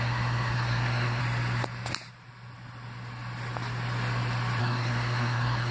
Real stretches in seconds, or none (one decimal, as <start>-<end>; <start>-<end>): 1.2-4.6